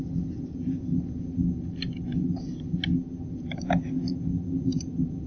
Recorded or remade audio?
recorded